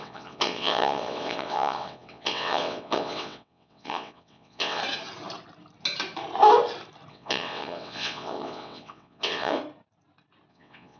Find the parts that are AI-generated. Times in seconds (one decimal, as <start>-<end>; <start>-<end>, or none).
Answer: 0.0-4.8; 7.1-9.6; 10.5-11.0